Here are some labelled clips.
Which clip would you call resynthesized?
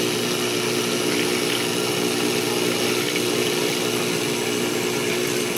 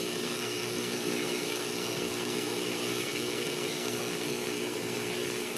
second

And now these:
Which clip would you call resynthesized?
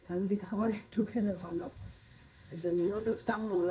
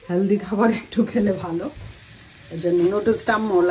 first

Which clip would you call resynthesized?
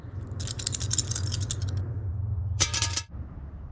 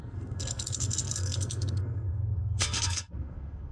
second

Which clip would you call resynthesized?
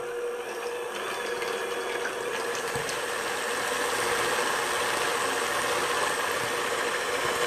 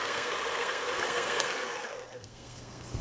second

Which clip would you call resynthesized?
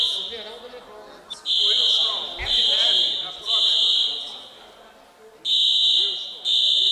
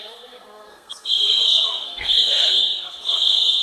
second